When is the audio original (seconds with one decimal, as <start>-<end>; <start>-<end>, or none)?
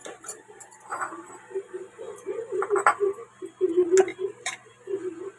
3.0-4.1; 4.7-5.4